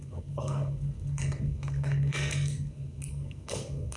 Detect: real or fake fake